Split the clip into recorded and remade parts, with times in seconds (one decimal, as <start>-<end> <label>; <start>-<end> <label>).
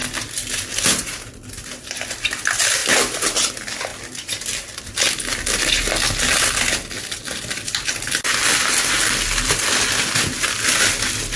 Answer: 0.0-11.4 recorded